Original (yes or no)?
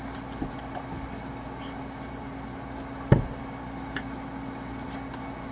yes